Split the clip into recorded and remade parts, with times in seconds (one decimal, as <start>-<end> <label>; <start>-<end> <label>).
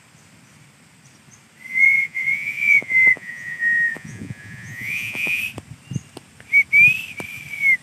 0.0-1.7 recorded; 1.7-5.4 remade; 5.4-7.8 recorded